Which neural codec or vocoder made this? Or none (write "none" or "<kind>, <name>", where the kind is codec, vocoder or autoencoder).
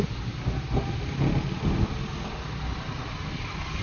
none